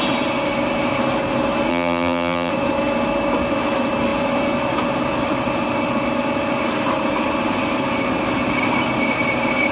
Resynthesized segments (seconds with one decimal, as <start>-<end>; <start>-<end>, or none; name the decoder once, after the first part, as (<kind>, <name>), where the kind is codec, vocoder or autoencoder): 1.7-2.5 (vocoder, BigVGAN v2)